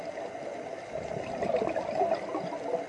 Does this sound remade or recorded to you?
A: recorded